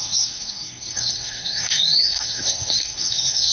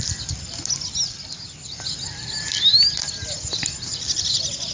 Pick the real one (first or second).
second